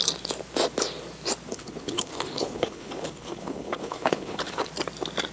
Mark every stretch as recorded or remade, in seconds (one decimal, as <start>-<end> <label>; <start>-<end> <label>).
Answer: 0.0-1.5 recorded; 1.5-4.7 remade; 4.7-5.3 recorded